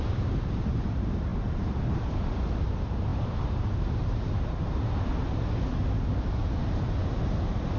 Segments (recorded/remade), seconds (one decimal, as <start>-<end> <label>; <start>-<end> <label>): 0.0-5.1 remade; 5.1-7.8 recorded

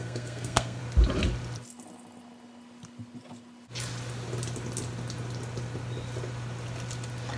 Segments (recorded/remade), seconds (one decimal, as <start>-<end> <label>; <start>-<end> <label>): 0.0-0.8 remade; 0.8-7.4 recorded

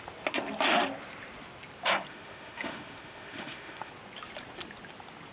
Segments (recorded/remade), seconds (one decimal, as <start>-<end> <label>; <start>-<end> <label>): 0.0-2.1 recorded; 2.1-3.9 remade; 3.9-5.3 recorded

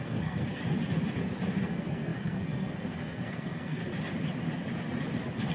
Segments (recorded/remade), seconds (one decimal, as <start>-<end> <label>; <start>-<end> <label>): 0.0-0.6 remade; 0.6-1.6 recorded; 1.6-3.8 remade; 3.8-5.5 recorded

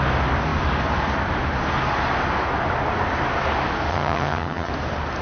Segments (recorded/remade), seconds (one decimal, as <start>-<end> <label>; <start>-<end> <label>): 0.0-3.9 recorded; 3.9-4.7 remade; 4.7-5.2 recorded

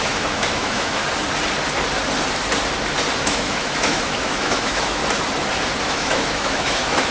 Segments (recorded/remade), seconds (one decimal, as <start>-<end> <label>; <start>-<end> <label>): 0.0-1.0 remade; 1.0-3.2 recorded; 3.2-5.0 remade; 5.0-5.8 recorded; 5.8-7.1 remade

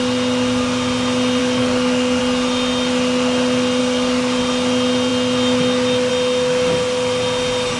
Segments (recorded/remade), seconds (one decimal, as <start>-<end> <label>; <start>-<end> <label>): 0.0-1.4 recorded; 1.4-2.2 remade; 2.2-3.8 recorded; 3.8-4.4 remade; 4.4-7.8 recorded

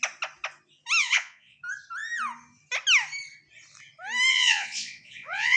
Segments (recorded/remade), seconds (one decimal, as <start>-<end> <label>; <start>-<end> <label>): 0.0-1.0 recorded; 1.0-1.6 remade; 1.6-4.3 recorded; 4.3-5.6 remade